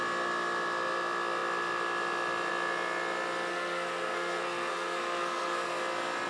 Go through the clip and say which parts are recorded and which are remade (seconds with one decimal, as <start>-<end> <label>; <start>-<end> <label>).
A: 0.0-3.5 recorded; 3.5-5.8 remade; 5.8-6.3 recorded